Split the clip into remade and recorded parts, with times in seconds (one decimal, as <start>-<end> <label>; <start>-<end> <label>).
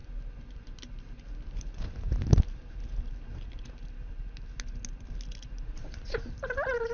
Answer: 0.0-6.9 recorded